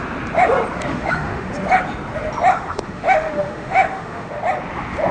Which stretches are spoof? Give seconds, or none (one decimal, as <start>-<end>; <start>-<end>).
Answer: 0.9-1.5; 2.5-4.4